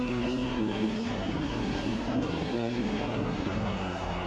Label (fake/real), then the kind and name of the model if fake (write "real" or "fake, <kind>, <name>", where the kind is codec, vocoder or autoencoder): fake, codec, SNAC